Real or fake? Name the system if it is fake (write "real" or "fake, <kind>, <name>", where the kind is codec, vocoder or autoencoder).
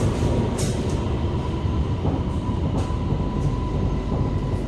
real